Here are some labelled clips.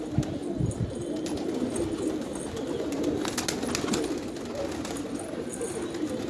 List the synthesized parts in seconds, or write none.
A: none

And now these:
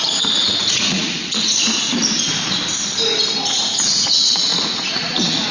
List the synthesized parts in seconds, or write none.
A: 0.0-1.9; 3.4-5.5